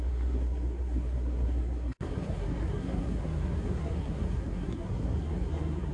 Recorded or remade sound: remade